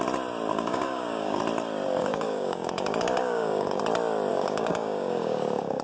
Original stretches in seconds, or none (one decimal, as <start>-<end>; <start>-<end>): 0.0-0.5; 1.4-2.0; 3.8-4.3